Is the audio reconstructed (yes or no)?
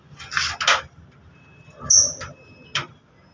no